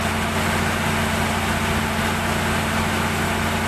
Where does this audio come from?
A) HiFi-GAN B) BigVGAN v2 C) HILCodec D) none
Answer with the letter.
D